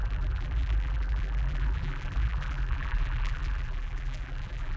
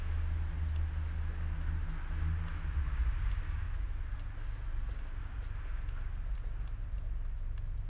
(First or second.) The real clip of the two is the second